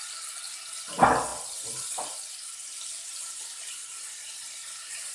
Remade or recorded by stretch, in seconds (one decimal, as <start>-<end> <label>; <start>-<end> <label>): 0.0-5.1 recorded